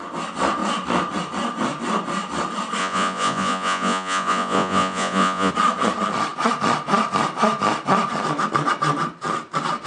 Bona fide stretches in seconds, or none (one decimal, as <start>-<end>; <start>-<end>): 0.0-2.8; 5.5-9.9